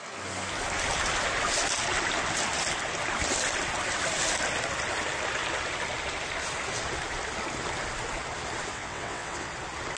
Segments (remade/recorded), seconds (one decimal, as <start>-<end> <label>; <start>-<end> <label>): 0.0-8.7 recorded; 8.7-9.5 remade; 9.5-10.0 recorded